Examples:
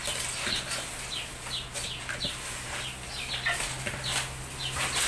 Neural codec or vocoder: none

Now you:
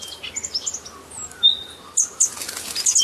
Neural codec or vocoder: none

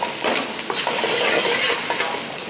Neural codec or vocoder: none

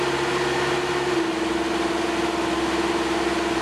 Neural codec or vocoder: none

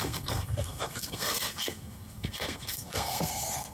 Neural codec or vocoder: codec, SNAC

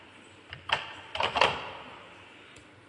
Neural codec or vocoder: none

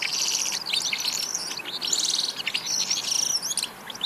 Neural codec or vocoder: none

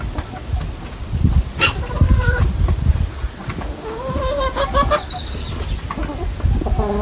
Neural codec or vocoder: none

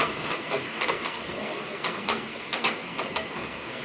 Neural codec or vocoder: codec, SNAC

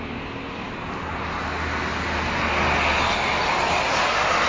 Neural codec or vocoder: none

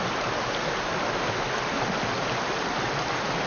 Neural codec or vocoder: none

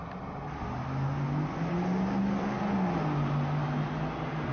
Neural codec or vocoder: none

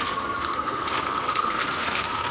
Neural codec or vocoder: codec, SNAC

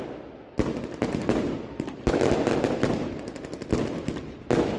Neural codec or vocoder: none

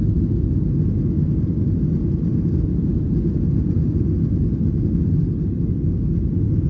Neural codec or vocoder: none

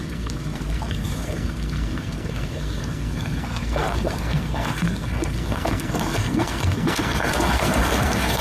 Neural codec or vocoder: codec, SNAC